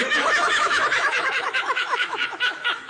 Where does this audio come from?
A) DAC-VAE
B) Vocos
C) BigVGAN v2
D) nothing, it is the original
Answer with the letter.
A